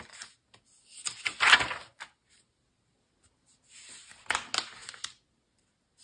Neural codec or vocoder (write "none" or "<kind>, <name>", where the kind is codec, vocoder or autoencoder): none